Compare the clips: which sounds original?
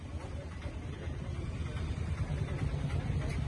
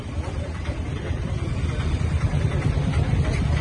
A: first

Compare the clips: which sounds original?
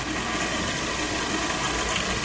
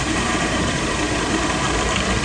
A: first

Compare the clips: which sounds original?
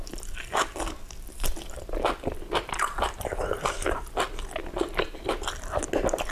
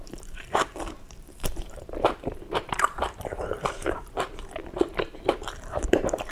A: first